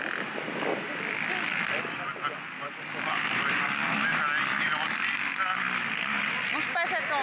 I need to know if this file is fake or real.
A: real